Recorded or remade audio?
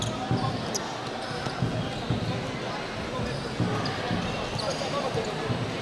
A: recorded